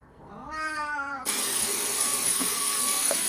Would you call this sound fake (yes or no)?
yes